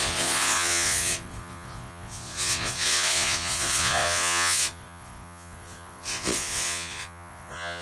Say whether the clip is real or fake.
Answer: fake